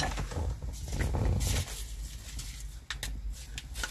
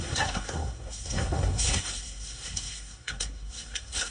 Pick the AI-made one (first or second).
second